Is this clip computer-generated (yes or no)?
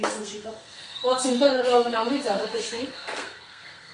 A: yes